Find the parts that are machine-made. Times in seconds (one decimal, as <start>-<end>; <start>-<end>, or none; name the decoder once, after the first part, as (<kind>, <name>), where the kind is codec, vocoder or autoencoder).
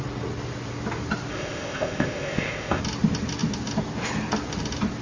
1.3-2.8 (codec, ZipCodec)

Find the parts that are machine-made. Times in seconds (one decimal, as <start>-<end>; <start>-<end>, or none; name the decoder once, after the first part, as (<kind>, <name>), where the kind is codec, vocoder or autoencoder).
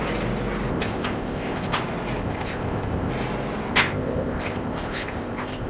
0.7-1.8 (codec, ZipCodec); 2.2-3.1; 3.7-5.7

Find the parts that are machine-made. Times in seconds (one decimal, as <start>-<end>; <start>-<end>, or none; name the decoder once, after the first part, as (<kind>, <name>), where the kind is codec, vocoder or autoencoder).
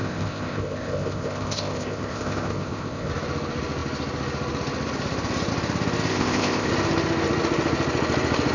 0.0-3.1 (codec, ZipCodec); 6.1-6.7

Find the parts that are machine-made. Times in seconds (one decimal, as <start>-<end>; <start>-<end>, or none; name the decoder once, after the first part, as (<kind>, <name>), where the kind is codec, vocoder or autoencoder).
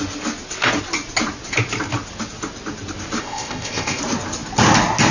3.2-4.0 (codec, ZipCodec)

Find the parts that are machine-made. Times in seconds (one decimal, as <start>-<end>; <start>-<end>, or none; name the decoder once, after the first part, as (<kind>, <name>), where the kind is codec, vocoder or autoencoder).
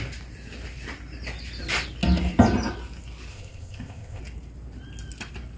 3.3-4.2 (codec, ZipCodec)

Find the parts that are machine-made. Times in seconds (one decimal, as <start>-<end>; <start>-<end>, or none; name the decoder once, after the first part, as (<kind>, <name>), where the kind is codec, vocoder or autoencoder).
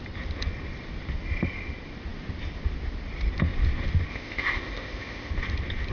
4.1-5.3 (codec, ZipCodec)